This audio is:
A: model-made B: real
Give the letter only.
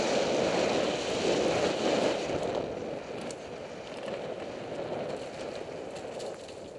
B